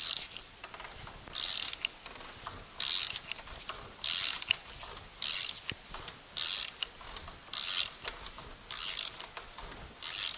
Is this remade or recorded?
recorded